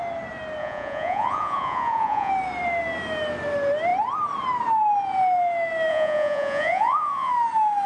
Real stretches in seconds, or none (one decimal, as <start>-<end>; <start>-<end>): 0.0-0.6; 2.3-5.9; 7.3-7.9